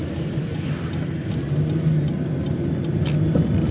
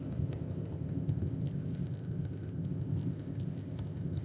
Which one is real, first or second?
first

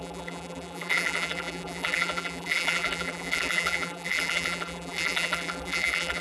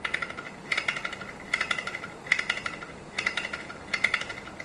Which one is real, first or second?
second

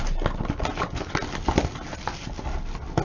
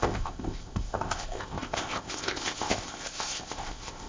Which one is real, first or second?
first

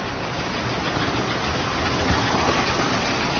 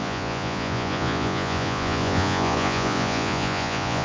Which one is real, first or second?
first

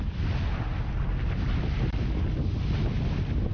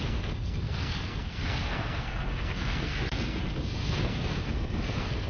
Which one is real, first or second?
first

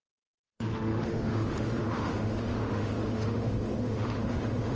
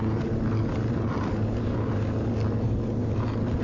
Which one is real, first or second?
second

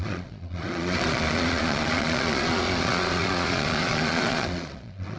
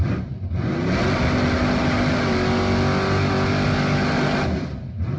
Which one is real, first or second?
second